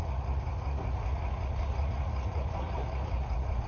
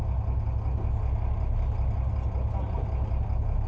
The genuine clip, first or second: second